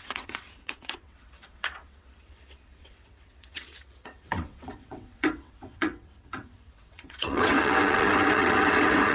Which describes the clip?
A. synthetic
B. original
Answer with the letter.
A